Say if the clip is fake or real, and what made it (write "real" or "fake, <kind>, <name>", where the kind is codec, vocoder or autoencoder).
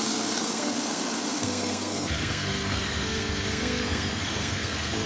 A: fake, codec, SNAC